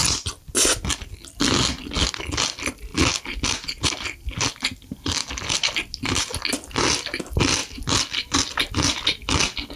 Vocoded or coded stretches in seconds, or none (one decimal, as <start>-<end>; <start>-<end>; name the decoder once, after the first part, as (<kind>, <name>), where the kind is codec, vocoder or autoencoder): none